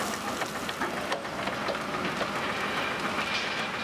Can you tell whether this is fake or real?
real